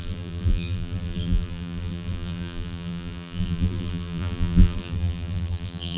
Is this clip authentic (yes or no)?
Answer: no